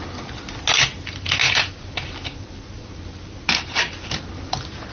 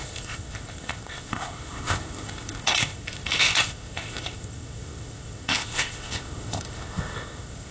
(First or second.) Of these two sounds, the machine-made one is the second